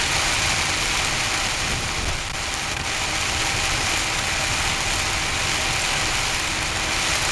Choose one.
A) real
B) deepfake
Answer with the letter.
A